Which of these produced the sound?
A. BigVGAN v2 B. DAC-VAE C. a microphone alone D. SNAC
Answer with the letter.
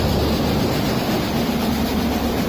A